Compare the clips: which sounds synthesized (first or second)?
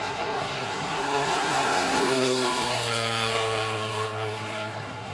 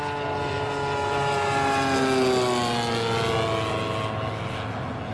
first